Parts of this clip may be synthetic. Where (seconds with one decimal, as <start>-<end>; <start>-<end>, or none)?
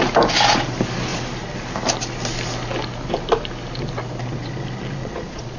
5.0-5.6